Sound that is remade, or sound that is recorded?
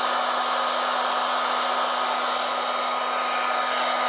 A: recorded